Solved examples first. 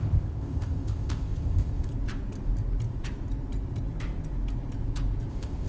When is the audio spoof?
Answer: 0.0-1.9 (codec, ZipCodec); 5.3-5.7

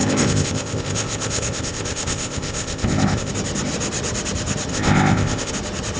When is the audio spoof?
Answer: 0.0-3.3 (codec, ZipCodec); 4.7-5.5

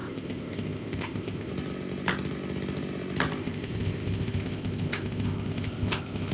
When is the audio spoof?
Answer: 0.0-1.5 (codec, ZipCodec); 3.4-6.3

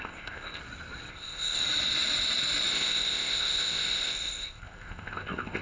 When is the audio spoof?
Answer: 0.0-0.6 (codec, ZipCodec); 1.1-1.6; 2.7-5.6

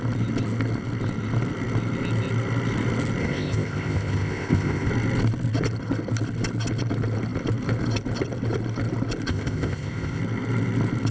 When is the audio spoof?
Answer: 3.2-4.9 (codec, ZipCodec); 9.3-10.2

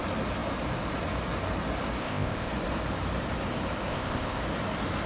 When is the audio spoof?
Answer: 2.0-2.5 (codec, ZipCodec); 3.9-4.4